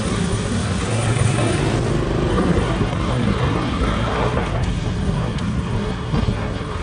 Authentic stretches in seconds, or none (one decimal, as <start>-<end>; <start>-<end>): 1.6-2.3